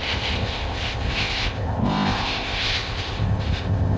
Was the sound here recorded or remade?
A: remade